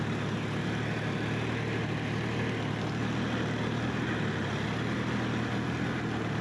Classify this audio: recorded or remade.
recorded